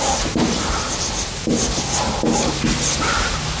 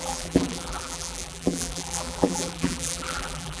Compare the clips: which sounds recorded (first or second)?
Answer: first